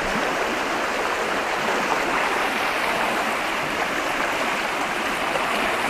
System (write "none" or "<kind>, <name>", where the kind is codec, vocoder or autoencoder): none